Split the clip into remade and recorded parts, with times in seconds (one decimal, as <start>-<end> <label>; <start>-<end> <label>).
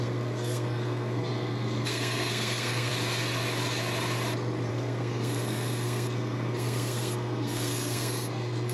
0.0-2.9 remade; 2.9-4.7 recorded; 4.7-8.7 remade